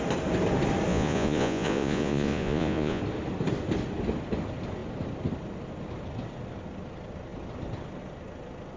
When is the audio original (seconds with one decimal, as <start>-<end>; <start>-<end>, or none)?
0.0-0.9; 3.0-8.8